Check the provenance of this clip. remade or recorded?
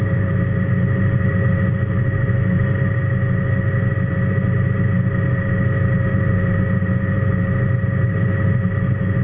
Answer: recorded